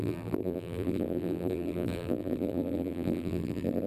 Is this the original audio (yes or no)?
no